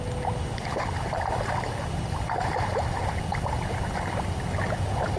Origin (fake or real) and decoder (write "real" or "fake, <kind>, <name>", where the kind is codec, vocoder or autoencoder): real